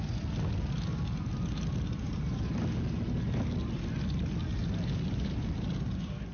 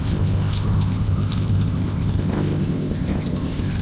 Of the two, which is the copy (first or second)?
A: second